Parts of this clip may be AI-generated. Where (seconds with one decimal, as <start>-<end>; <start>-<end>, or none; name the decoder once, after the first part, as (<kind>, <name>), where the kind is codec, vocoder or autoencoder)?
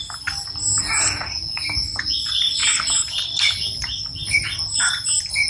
none